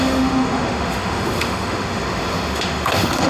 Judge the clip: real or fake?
fake